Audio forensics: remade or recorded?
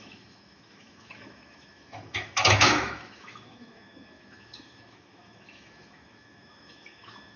remade